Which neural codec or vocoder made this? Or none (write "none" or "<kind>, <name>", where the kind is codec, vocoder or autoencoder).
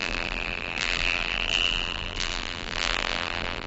vocoder, BigVGAN v2